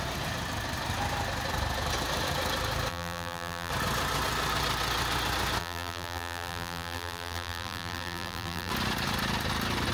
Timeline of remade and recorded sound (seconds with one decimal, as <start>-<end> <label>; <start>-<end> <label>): 0.0-2.9 recorded; 2.9-3.7 remade; 3.7-5.6 recorded; 5.6-8.7 remade; 8.7-9.9 recorded